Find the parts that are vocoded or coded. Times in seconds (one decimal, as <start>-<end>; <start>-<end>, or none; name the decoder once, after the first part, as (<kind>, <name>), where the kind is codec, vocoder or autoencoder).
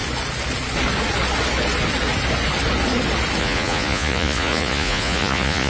3.4-5.7 (vocoder, Vocos)